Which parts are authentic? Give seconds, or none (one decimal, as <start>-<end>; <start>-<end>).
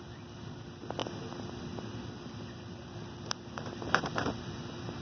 0.0-5.0